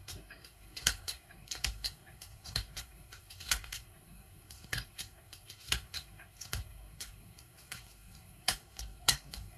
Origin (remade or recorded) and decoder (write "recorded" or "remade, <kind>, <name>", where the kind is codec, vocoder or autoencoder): remade, codec, SNAC